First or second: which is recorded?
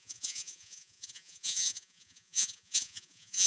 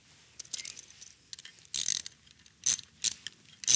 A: second